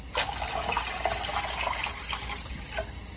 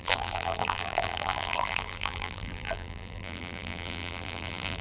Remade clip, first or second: second